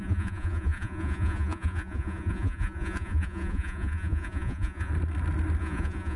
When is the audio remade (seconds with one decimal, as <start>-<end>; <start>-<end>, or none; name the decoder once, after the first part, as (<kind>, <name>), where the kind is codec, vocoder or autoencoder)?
0.0-4.9 (vocoder, Vocos); 5.6-6.2